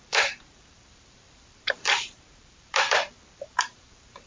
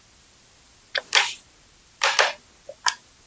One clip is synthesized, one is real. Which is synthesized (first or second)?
first